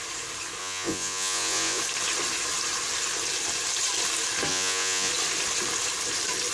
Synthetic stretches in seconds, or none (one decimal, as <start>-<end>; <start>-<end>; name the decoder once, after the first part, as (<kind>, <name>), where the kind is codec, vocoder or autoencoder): 0.6-1.8 (vocoder, Vocos); 4.5-5.1